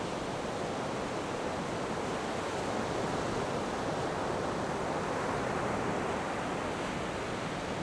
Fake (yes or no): no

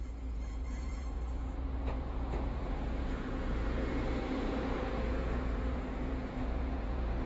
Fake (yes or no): yes